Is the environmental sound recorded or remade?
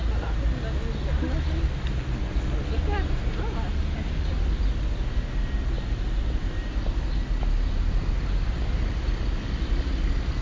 recorded